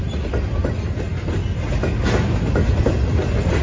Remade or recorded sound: recorded